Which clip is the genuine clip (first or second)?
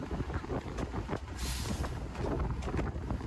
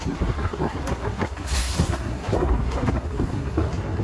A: first